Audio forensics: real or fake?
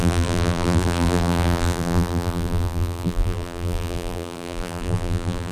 fake